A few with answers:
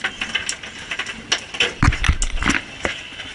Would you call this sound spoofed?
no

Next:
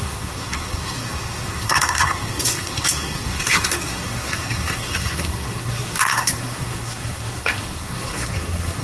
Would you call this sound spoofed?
yes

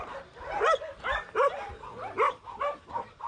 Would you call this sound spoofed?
no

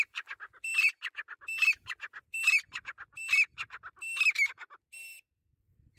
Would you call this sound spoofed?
no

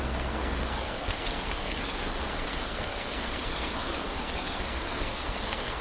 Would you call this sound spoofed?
yes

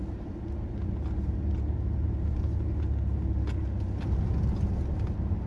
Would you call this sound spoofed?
no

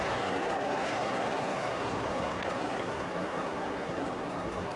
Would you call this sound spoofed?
yes